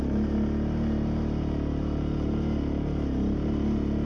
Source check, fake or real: real